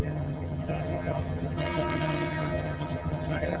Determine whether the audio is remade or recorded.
remade